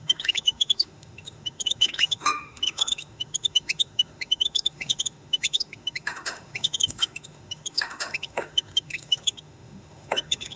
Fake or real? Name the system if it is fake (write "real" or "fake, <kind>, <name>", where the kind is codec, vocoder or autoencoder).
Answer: fake, autoencoder, DAC-VAE